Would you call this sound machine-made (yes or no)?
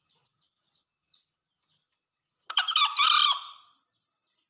no